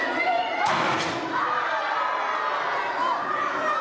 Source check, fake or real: real